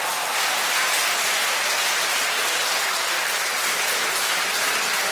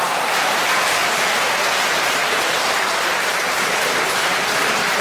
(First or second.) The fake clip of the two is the second